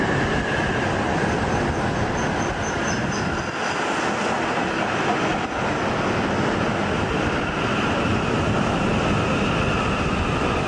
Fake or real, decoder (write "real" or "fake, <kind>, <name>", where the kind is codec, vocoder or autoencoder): real